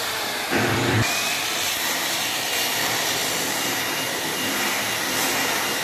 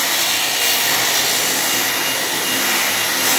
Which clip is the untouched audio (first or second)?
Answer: second